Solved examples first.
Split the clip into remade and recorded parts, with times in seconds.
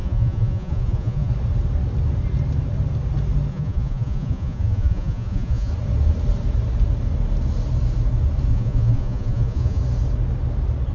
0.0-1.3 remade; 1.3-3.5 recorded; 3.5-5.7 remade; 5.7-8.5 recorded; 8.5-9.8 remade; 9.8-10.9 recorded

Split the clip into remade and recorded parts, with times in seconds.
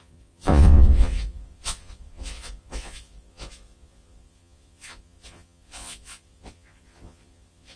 0.0-7.8 remade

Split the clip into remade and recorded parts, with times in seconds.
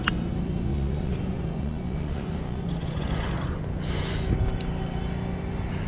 0.0-0.7 recorded; 0.7-3.6 remade; 3.6-5.9 recorded